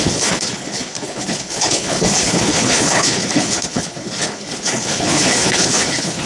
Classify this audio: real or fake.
fake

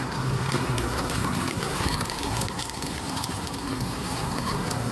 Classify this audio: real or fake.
fake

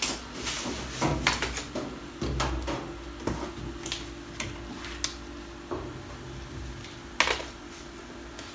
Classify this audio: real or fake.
real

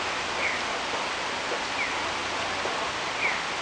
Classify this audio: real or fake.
real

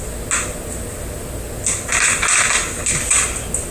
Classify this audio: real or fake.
real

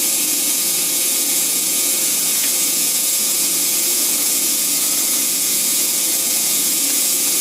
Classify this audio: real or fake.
fake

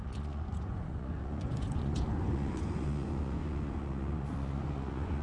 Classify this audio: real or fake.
fake